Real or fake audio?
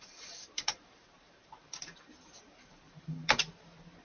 fake